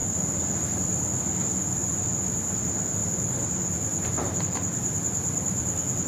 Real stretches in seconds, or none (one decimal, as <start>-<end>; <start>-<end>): 0.0-6.1